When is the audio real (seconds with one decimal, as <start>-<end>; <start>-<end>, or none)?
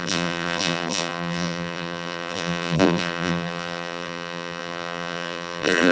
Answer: none